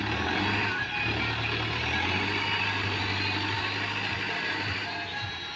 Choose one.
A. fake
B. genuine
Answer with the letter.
B